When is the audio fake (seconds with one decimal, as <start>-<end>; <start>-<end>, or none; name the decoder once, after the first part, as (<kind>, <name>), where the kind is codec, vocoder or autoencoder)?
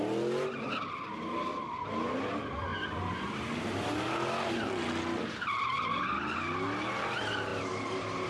none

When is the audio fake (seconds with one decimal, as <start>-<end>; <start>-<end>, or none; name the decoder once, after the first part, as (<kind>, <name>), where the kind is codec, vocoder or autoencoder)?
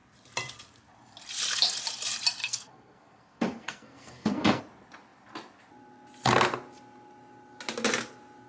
2.4-4.6 (codec, SNAC)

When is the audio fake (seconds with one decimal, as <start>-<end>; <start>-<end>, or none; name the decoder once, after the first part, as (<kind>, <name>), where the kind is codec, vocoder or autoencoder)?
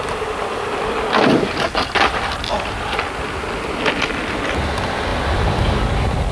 5.1-5.8 (vocoder, BigVGAN v2)